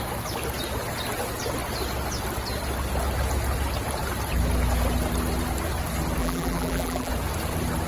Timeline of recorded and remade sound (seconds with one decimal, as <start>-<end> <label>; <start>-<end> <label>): 0.0-6.2 recorded; 6.2-7.1 remade; 7.1-7.9 recorded